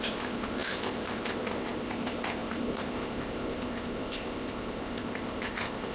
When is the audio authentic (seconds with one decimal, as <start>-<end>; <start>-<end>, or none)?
none